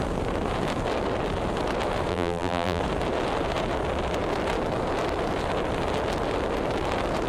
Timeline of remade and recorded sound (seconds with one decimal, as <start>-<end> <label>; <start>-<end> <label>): 0.0-2.1 recorded; 2.1-2.8 remade; 2.8-7.3 recorded